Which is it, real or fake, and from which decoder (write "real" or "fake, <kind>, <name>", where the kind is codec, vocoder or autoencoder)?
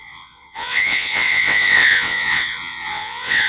fake, vocoder, WaveNeXt